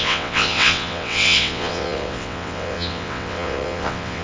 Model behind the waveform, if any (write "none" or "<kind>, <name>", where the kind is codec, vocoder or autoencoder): vocoder, WaveNeXt